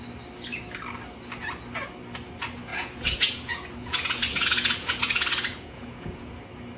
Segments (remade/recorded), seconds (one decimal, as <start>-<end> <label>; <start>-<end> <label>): 0.0-2.7 recorded; 2.7-6.3 remade; 6.3-6.8 recorded